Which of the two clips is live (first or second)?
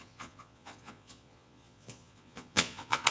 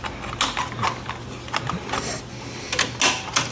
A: second